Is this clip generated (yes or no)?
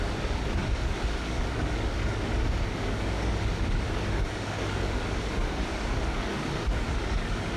yes